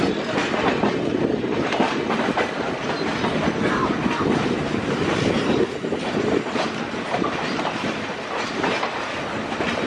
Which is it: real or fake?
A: real